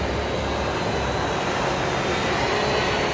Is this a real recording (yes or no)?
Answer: yes